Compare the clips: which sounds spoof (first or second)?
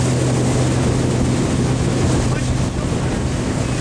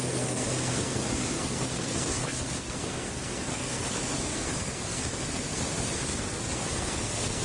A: second